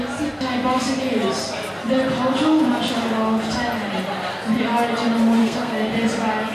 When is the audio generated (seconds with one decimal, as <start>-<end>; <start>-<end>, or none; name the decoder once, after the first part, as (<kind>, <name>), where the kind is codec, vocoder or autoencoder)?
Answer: 5.4-5.9 (codec, SNAC)